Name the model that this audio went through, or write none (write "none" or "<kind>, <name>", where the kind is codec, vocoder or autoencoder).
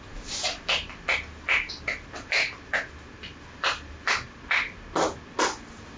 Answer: none